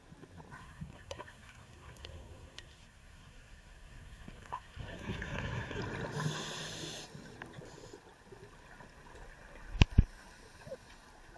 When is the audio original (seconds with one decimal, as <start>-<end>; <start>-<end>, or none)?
0.0-0.6; 5.8-11.4

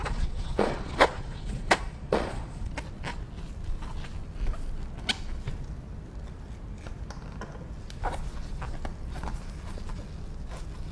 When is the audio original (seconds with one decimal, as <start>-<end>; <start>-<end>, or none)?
2.7-10.9

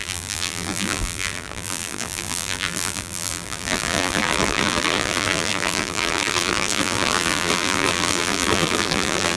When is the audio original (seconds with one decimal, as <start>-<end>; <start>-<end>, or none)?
none

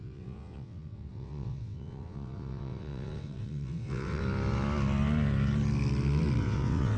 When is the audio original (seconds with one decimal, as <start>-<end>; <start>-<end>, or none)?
4.2-6.4